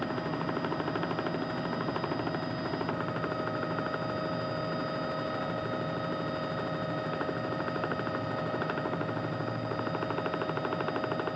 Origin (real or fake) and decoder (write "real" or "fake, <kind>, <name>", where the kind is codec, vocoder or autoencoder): real